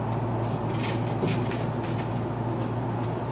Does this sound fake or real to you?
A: real